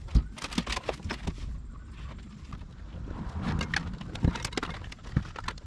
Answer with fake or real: real